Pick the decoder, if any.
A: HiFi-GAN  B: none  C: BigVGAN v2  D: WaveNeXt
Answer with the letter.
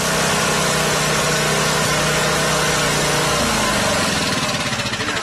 B